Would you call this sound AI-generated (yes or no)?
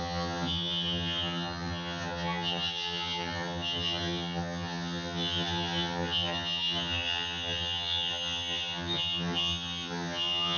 yes